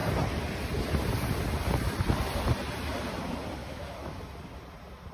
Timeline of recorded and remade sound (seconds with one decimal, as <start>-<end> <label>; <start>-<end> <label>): 0.0-3.6 recorded; 3.6-4.2 remade; 4.2-5.1 recorded